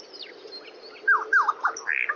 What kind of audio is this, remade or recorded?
recorded